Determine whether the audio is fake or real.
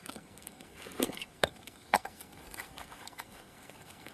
fake